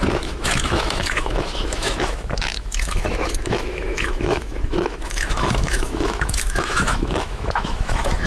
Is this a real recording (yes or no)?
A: no